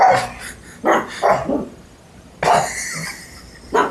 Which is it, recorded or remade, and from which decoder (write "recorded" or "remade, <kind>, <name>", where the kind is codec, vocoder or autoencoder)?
recorded